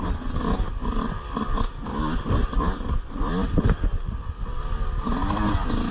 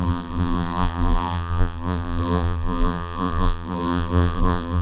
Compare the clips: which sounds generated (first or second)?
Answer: second